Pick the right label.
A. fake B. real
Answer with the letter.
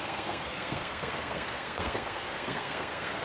A